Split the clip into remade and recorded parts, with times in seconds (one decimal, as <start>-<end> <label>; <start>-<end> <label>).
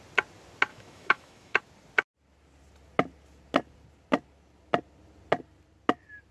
0.0-0.7 recorded; 0.7-1.6 remade; 1.6-6.3 recorded